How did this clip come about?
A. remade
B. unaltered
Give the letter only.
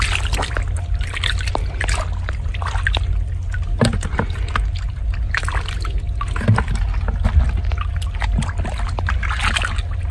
B